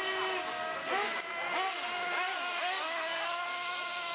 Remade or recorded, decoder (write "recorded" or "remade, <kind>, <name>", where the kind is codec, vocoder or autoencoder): recorded